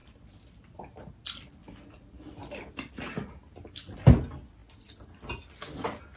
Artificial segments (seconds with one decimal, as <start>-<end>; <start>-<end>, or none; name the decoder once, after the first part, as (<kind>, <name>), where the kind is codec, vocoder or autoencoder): none